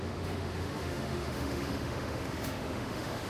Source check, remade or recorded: remade